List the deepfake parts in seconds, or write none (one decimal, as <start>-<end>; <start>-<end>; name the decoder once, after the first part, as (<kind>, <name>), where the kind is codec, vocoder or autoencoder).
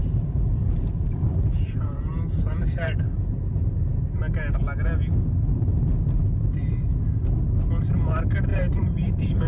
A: 0.0-4.2 (vocoder, BigVGAN v2); 8.5-9.5